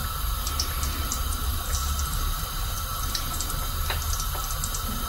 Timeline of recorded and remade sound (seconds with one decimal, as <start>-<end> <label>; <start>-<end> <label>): 0.0-1.1 recorded; 1.1-3.8 remade; 3.8-5.1 recorded